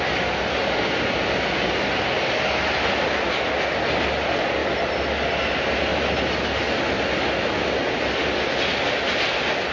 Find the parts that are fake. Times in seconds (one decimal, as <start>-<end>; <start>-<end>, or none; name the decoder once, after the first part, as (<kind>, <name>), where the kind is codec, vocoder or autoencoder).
none